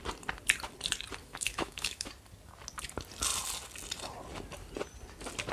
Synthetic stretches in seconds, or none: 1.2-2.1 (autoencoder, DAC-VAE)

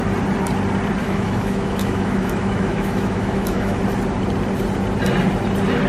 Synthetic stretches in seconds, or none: 1.0-3.8 (autoencoder, DAC-VAE)